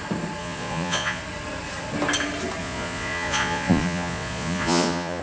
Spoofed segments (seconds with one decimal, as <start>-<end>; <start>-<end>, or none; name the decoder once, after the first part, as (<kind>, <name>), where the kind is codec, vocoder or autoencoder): 0.4-1.2 (vocoder, Vocos); 2.6-5.2